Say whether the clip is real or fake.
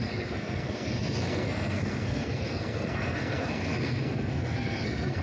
fake